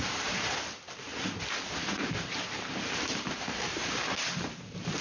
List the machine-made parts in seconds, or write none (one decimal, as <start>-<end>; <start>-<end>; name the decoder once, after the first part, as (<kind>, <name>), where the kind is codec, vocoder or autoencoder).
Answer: 0.0-5.0 (vocoder, BigVGAN v2)